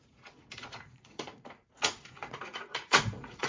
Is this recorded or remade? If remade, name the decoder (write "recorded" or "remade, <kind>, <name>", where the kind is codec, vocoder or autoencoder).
remade, vocoder, Vocos